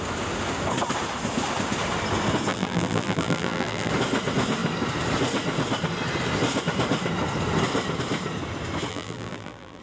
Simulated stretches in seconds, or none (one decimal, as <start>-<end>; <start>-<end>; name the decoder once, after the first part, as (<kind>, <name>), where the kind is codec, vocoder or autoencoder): 2.5-3.9 (vocoder, BigVGAN v2); 8.9-9.8